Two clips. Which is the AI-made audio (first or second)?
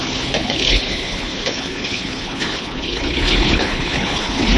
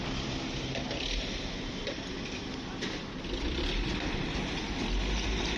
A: first